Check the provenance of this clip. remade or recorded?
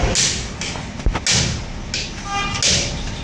recorded